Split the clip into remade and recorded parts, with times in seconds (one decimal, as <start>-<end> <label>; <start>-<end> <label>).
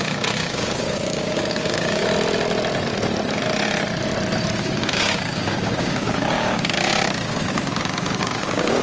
0.0-2.1 remade; 2.1-4.6 recorded; 4.6-8.8 remade